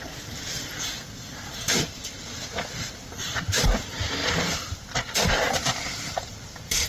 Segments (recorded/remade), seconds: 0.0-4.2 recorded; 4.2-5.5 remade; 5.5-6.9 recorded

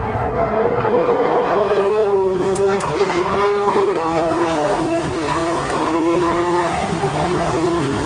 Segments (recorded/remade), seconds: 0.0-8.1 remade

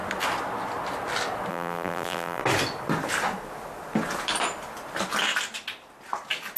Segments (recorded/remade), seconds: 0.0-1.5 recorded; 1.5-2.4 remade; 2.4-6.6 recorded

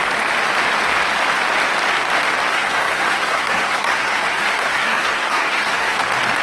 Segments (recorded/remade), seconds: 0.0-2.5 recorded; 2.5-6.0 remade; 6.0-6.4 recorded

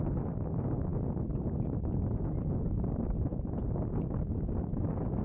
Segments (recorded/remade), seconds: 0.0-5.2 recorded

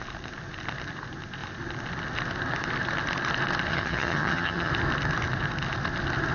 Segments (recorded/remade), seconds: 0.0-3.7 recorded; 3.7-4.7 remade; 4.7-6.3 recorded

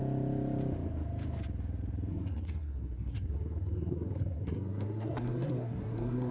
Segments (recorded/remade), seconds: 0.0-2.1 recorded; 2.1-6.3 remade

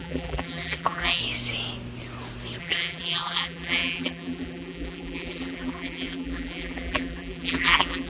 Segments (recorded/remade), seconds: 0.0-1.2 remade; 1.2-2.6 recorded; 2.6-8.1 remade